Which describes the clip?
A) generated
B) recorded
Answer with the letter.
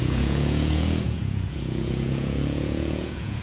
A